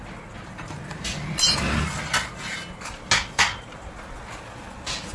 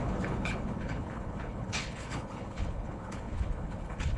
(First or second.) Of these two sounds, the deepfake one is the second